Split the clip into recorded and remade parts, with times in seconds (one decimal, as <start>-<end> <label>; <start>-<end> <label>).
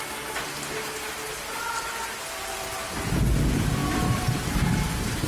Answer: 0.0-3.8 recorded; 3.8-5.3 remade